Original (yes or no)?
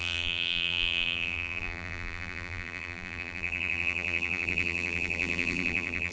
no